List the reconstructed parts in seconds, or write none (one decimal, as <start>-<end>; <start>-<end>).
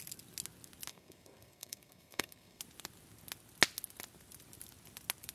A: 0.9-2.6